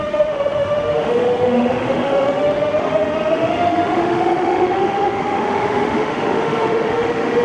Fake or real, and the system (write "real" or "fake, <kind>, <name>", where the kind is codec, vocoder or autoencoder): fake, autoencoder, DAC-VAE